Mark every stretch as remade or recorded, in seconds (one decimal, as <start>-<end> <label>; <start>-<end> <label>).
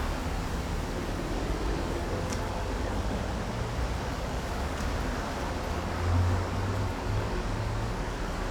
0.0-3.2 remade; 3.2-4.0 recorded; 4.0-4.9 remade; 4.9-5.7 recorded; 5.7-8.5 remade